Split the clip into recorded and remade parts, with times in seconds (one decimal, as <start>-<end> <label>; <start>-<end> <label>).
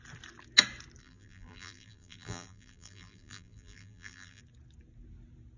0.0-1.0 recorded; 1.0-4.4 remade; 4.4-5.6 recorded